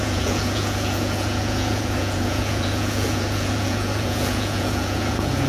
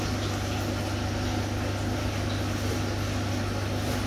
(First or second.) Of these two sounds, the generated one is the first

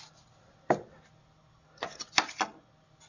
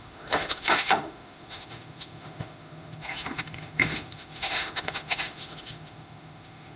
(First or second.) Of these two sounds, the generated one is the second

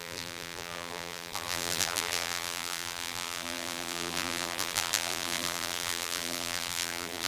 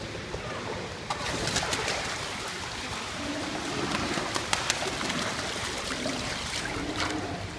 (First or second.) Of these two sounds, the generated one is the first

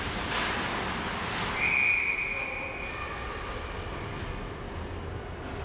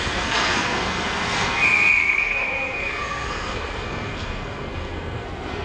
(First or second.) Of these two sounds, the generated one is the second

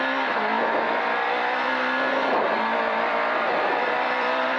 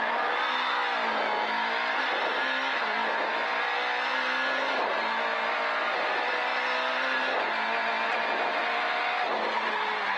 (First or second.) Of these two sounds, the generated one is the first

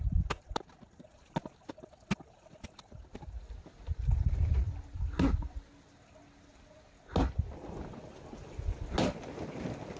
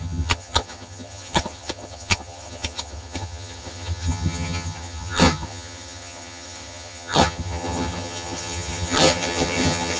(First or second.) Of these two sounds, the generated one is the second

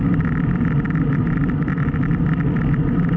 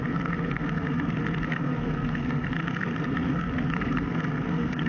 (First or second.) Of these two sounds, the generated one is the second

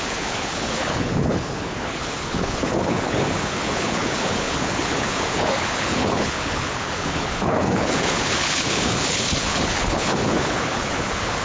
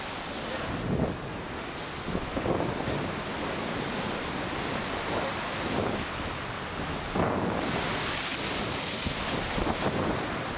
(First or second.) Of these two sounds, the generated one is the first